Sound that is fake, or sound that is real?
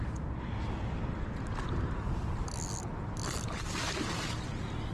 real